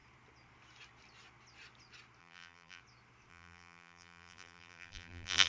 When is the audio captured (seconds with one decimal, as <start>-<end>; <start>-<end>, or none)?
0.0-2.2; 2.8-3.3